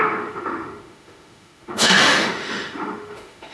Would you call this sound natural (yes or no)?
no